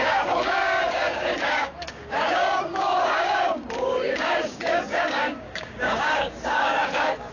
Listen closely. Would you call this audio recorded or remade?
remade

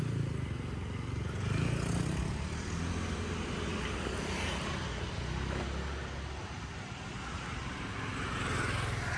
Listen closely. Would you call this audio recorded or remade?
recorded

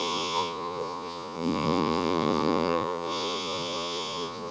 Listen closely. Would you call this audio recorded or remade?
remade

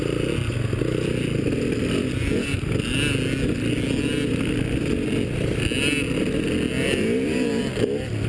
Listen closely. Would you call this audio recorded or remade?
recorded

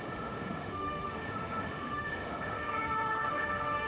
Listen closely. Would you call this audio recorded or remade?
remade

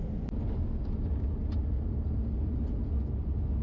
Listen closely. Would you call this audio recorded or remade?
recorded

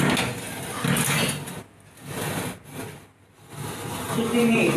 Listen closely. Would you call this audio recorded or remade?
recorded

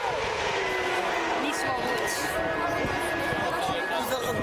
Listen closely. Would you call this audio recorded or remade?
recorded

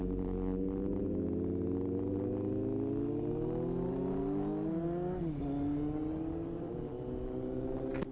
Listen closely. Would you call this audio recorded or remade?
recorded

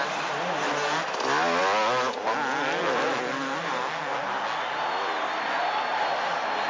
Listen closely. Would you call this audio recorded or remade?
recorded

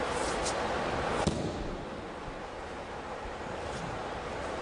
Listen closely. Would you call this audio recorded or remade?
recorded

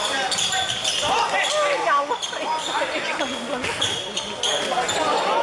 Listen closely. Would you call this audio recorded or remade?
recorded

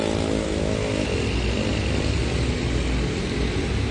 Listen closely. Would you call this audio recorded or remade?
recorded